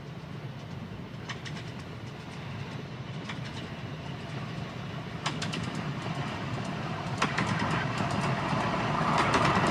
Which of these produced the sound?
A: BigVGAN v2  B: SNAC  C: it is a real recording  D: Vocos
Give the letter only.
C